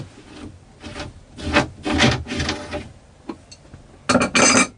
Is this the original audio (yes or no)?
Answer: yes